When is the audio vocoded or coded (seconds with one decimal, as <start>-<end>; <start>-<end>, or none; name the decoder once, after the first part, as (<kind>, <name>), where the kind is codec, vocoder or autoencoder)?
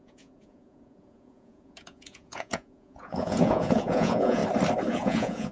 0.0-4.4 (vocoder, Vocos); 4.9-5.5